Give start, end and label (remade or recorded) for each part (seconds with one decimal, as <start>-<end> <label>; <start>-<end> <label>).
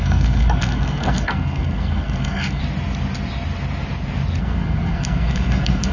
0.0-2.6 remade; 2.6-4.4 recorded; 4.4-5.9 remade